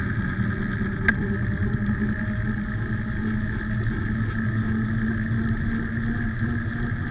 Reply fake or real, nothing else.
real